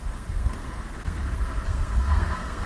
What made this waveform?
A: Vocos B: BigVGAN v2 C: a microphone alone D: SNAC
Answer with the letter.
D